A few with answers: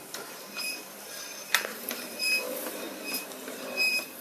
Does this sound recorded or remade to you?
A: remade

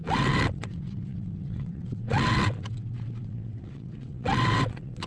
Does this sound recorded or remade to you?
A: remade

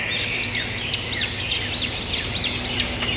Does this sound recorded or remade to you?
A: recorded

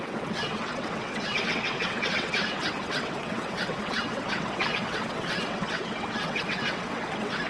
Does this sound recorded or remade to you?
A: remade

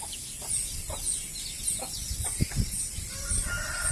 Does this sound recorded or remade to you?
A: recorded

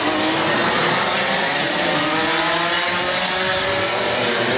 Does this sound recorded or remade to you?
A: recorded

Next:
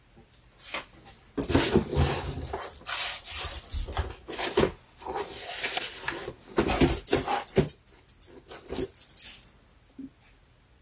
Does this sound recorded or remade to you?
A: recorded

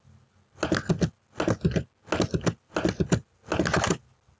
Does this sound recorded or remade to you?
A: recorded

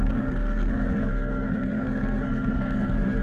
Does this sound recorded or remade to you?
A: remade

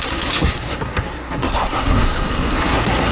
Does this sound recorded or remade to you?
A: remade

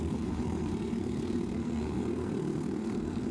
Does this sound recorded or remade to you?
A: remade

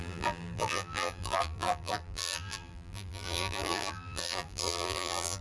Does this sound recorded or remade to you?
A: remade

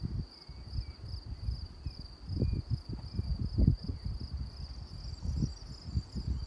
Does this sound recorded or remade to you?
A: recorded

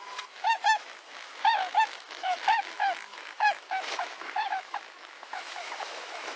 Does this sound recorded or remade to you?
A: remade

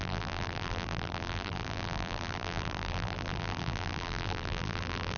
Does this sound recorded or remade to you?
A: remade